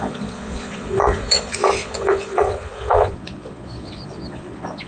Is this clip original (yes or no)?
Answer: no